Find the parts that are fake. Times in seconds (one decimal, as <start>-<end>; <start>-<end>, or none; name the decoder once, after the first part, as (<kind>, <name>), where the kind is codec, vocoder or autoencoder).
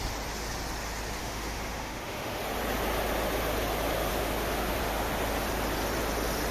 1.2-2.4 (autoencoder, DAC-VAE); 4.1-4.8